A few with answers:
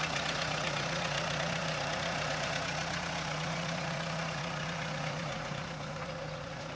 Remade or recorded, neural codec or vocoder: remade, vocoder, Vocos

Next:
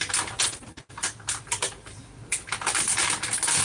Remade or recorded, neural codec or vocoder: recorded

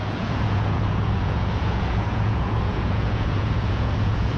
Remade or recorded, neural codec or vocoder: remade, vocoder, Vocos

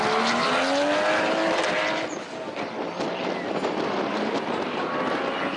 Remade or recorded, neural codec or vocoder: recorded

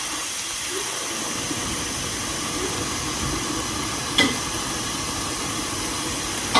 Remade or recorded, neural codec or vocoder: recorded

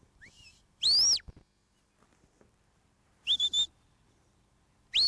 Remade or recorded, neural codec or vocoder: recorded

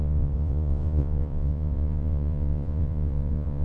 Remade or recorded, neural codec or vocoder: remade, vocoder, Vocos